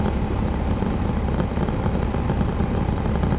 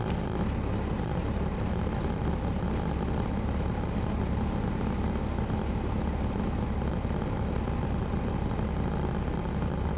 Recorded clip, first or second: second